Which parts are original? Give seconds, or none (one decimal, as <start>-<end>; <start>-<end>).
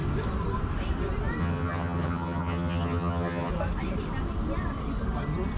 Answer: 0.0-1.4; 3.5-5.6